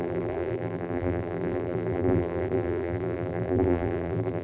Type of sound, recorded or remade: remade